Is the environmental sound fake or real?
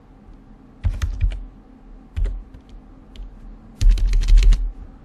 real